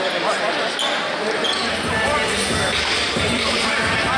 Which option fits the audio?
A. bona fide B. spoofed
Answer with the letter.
A